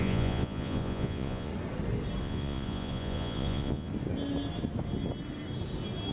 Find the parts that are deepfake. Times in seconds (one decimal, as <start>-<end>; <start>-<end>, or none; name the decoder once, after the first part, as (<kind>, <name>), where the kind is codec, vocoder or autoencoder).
0.0-1.5 (vocoder, Vocos); 2.2-3.9